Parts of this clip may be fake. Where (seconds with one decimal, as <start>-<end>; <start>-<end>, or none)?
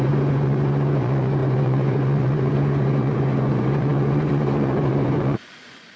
0.0-6.0